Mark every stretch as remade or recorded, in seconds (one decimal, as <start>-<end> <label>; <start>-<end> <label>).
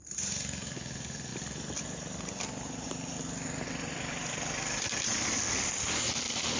0.0-6.6 recorded